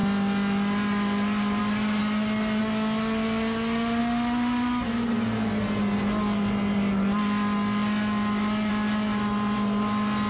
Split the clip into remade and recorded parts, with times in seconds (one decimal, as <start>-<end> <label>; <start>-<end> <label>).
0.0-10.3 recorded